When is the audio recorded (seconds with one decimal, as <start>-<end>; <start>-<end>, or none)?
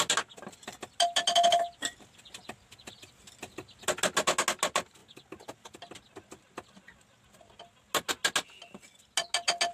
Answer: 0.0-9.7